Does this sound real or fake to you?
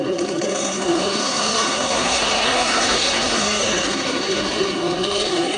fake